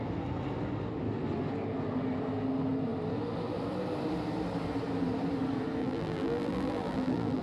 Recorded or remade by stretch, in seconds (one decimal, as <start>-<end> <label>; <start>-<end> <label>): 0.0-5.8 recorded; 5.8-7.4 remade